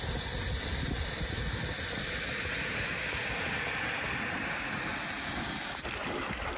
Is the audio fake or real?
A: real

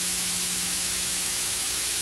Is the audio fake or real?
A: fake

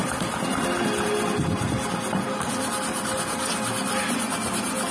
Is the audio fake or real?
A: real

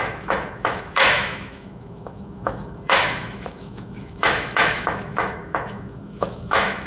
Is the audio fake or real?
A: fake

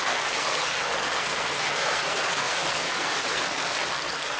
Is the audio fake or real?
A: fake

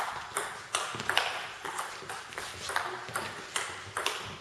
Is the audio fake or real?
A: real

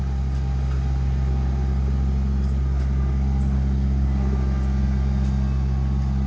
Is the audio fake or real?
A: real